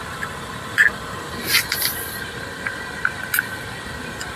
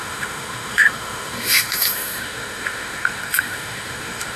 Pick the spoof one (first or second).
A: second